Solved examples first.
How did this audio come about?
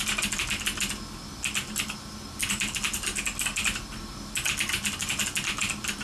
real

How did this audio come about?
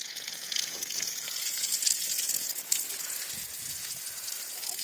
fake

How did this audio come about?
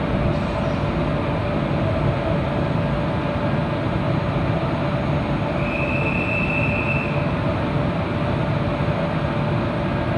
real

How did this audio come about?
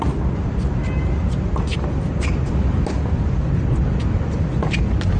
real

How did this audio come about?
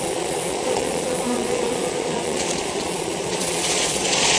fake